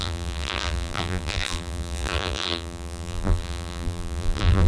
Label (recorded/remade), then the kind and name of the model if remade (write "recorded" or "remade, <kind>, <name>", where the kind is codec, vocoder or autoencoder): remade, vocoder, BigVGAN v2